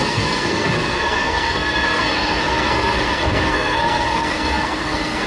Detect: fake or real fake